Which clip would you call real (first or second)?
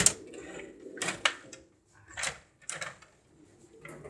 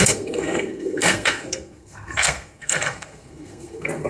first